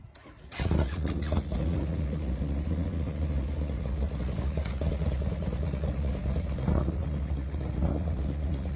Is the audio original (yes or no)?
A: no